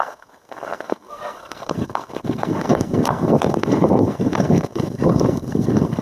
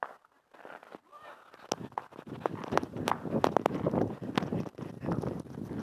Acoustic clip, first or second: second